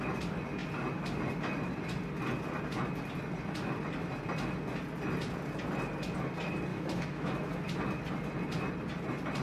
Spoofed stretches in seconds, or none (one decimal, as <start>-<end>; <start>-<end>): 6.7-7.5